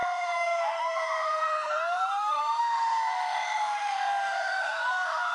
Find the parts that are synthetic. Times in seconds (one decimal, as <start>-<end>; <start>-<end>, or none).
0.0-5.3